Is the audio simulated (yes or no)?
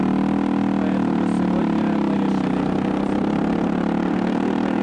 no